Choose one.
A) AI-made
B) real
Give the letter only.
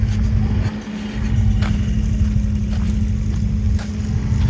B